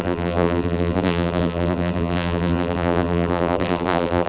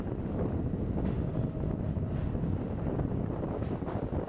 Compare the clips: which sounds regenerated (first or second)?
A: first